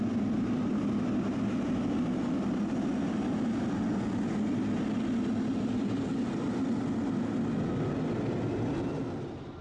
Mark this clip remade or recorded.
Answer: recorded